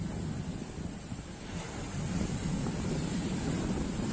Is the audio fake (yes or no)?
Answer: no